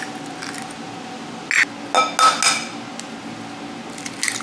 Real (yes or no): yes